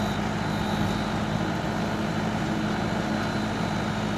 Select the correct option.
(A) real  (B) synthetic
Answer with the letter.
A